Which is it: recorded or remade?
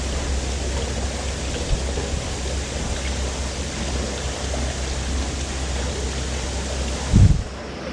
recorded